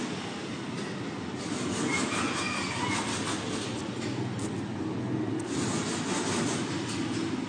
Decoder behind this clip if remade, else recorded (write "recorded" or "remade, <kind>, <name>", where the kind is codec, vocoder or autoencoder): recorded